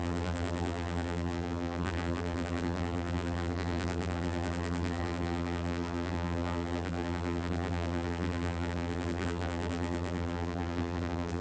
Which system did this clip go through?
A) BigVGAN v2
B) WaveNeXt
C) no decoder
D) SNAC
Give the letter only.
A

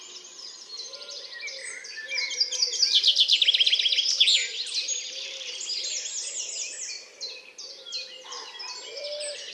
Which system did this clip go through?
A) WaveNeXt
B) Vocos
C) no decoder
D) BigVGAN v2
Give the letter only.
C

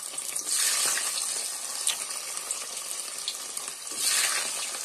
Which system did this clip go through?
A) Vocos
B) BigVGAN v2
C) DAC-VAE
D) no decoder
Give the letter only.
D